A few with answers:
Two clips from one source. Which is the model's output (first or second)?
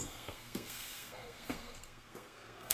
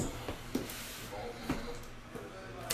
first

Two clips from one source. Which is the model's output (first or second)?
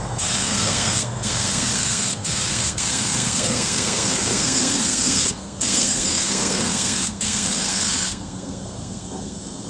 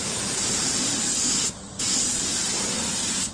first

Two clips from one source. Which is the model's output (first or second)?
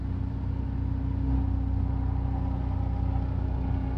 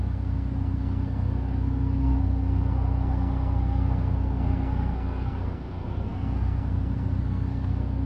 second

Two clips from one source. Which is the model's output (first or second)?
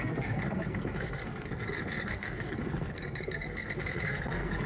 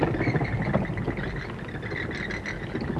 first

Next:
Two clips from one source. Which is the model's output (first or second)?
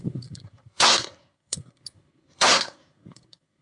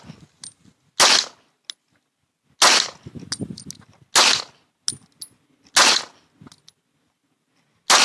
first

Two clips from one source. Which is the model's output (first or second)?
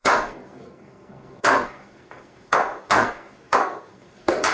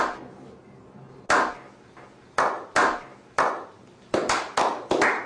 first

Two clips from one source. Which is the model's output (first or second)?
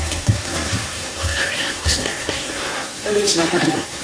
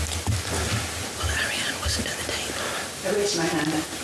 first